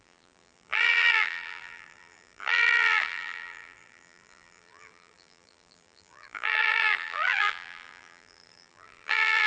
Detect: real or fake fake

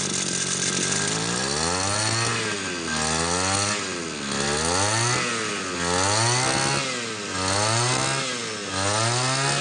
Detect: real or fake real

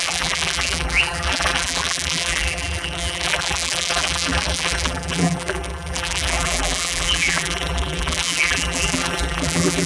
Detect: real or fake fake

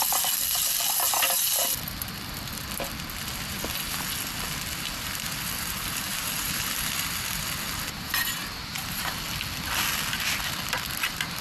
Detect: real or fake real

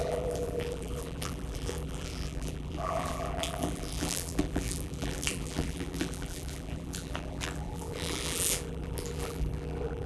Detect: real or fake fake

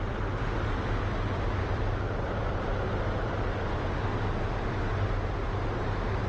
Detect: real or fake real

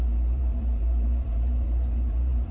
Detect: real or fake fake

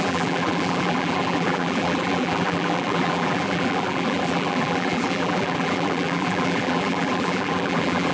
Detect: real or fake fake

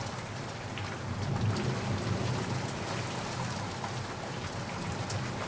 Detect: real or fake fake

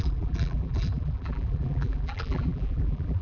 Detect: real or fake fake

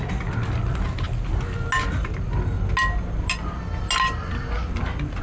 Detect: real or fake real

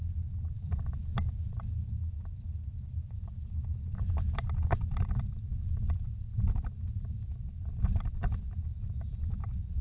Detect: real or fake real